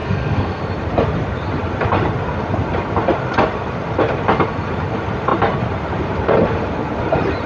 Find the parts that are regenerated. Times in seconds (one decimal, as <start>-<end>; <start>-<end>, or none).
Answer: 0.0-0.6